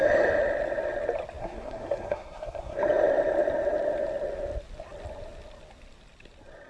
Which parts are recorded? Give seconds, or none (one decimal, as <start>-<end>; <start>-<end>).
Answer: 0.0-1.4; 2.8-6.7

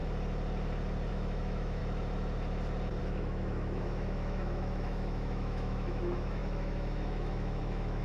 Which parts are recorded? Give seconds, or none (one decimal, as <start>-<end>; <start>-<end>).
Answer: 0.0-1.1; 1.8-3.0

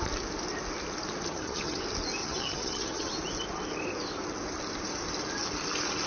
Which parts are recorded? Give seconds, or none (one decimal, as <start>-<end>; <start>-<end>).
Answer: 0.0-1.3; 1.8-2.2; 3.1-6.1